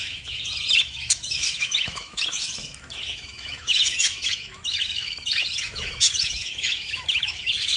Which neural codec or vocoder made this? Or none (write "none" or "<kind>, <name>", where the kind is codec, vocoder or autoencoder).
autoencoder, DAC-VAE